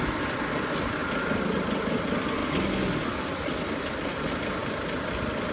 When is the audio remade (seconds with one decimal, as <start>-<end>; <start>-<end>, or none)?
none